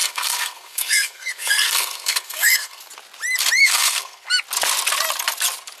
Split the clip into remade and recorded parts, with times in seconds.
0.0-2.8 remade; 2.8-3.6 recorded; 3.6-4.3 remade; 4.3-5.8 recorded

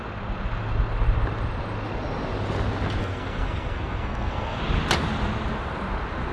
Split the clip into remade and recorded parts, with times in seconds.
0.0-3.0 recorded; 3.0-4.6 remade; 4.6-6.3 recorded